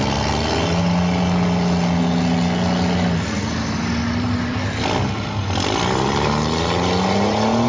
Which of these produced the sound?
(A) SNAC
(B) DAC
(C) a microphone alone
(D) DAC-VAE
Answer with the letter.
C